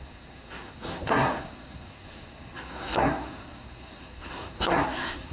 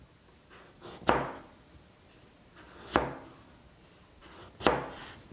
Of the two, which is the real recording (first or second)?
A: second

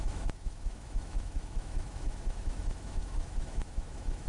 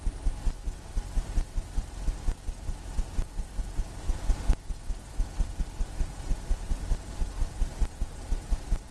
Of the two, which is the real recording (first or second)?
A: second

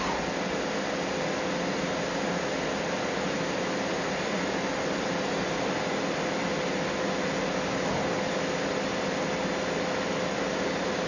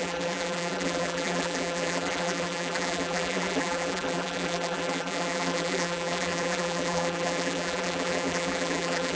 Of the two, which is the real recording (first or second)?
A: first